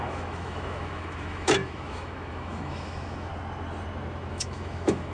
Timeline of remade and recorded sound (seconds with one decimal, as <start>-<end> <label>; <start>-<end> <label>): 0.0-3.3 remade; 3.3-4.3 recorded; 4.3-5.1 remade